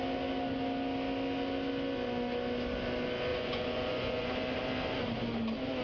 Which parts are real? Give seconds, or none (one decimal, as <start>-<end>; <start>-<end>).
0.0-3.3; 4.3-5.8